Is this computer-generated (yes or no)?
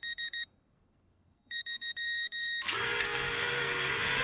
yes